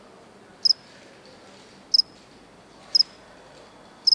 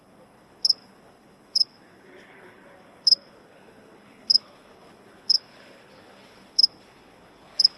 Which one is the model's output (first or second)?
second